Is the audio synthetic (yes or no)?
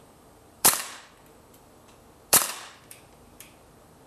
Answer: yes